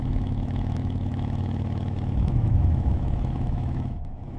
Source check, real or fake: fake